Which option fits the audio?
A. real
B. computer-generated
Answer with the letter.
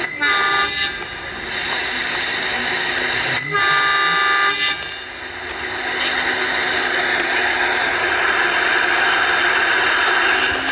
A